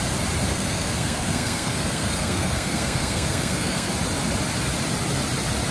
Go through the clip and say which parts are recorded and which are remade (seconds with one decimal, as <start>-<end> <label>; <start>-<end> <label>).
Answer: 0.0-0.5 recorded; 0.5-3.9 remade; 3.9-5.7 recorded